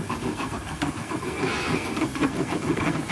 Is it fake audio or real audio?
fake